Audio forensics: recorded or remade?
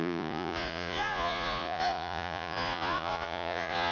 remade